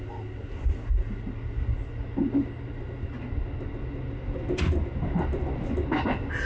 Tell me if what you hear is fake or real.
real